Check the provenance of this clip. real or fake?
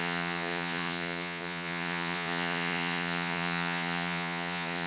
fake